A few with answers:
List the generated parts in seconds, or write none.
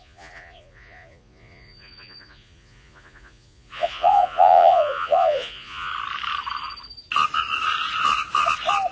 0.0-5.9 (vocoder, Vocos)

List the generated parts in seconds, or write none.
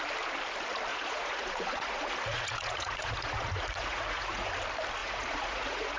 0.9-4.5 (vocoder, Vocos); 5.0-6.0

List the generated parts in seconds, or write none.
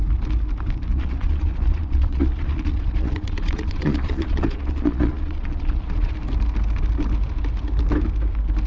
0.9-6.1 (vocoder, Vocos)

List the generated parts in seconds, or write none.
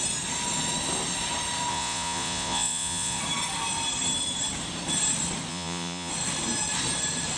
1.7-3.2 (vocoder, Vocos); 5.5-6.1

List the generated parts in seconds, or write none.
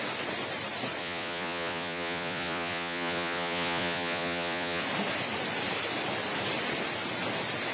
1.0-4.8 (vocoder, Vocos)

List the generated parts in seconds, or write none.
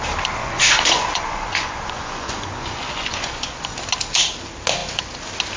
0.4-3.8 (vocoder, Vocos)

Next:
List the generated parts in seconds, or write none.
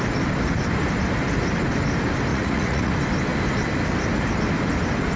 2.3-2.9 (vocoder, Vocos)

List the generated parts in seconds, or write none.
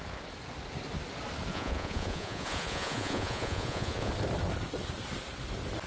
1.5-4.1 (vocoder, Vocos)